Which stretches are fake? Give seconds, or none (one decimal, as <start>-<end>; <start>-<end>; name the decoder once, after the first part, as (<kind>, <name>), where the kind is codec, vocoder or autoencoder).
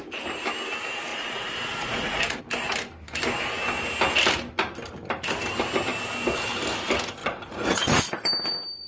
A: 1.1-2.4 (vocoder, Vocos); 7.2-8.1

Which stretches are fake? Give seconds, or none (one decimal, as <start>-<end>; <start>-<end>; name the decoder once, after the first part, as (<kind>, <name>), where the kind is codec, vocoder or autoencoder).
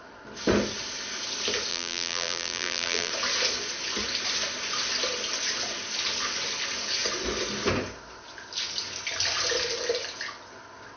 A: 1.7-3.1 (vocoder, BigVGAN v2)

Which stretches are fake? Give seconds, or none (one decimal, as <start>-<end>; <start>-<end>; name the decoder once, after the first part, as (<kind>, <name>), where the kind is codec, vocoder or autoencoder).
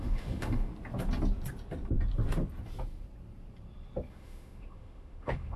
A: 0.0-0.7 (autoencoder, DAC-VAE); 4.1-5.6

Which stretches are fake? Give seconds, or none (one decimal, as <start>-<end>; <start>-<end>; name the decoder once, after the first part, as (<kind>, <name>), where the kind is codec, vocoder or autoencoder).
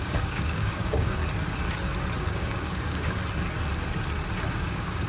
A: 0.0-1.2 (codec, DAC); 2.2-3.2; 4.5-5.1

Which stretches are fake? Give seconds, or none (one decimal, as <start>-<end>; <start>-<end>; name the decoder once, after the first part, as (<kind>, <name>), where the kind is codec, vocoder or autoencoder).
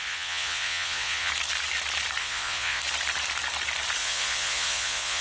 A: 0.0-1.3 (vocoder, Vocos); 2.2-2.8; 4.0-5.2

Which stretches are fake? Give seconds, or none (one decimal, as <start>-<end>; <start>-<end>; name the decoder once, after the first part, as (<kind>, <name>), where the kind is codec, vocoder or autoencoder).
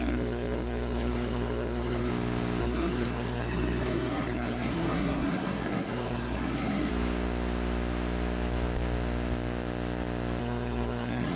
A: 0.0-2.1 (codec, SNAC); 2.6-6.9; 10.4-11.4